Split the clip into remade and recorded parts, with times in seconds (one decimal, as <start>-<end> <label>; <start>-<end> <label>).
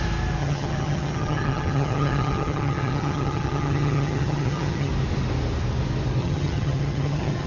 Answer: 0.0-0.4 recorded; 0.4-4.9 remade; 4.9-6.2 recorded; 6.2-7.5 remade